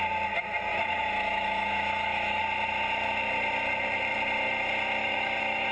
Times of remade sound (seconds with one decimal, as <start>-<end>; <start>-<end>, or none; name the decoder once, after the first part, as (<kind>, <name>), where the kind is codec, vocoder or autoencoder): 0.7-2.4 (autoencoder, DAC-VAE); 5.0-5.7